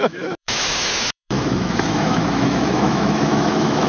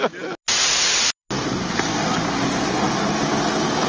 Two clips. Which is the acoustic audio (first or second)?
second